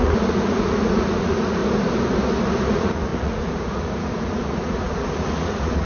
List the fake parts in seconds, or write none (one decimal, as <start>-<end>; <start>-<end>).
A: 0.0-1.6; 2.7-5.9